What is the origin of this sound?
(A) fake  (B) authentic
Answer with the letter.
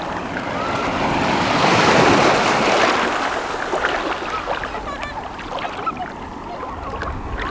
B